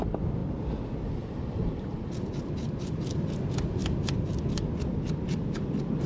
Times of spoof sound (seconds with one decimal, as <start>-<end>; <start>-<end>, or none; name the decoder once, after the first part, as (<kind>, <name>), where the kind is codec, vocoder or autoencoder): none